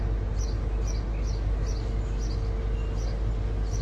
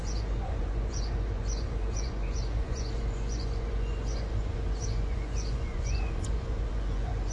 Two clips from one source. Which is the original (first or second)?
first